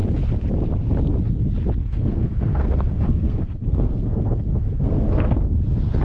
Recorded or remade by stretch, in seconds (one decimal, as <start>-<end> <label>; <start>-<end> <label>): 0.0-1.8 recorded; 1.8-5.4 remade; 5.4-6.0 recorded